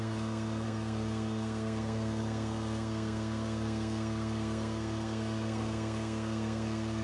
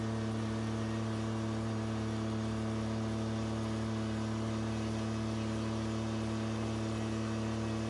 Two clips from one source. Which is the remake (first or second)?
first